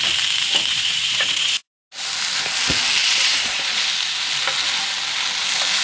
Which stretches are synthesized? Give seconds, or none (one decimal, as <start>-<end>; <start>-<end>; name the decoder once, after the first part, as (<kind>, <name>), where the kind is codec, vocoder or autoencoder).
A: 0.7-1.6 (vocoder, Vocos); 3.0-3.8